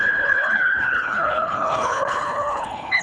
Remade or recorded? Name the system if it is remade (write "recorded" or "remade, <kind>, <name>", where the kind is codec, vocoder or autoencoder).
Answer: remade, codec, HILCodec